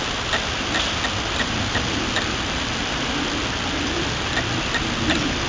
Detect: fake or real real